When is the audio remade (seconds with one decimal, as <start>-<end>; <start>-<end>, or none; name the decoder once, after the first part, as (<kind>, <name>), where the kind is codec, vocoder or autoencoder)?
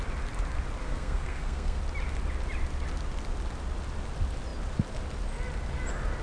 0.8-1.8 (codec, SNAC)